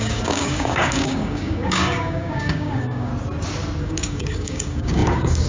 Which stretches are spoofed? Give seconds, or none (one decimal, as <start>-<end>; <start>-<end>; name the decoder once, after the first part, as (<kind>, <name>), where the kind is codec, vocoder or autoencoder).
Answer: 0.0-3.1 (codec, DAC); 3.8-5.5